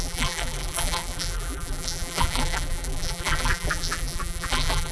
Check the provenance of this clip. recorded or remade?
remade